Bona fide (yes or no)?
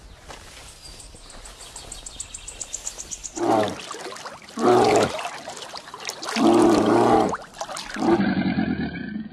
yes